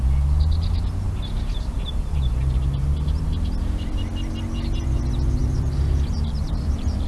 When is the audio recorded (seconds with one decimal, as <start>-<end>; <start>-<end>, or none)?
0.0-5.4